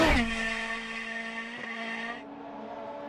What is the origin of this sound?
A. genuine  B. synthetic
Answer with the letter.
A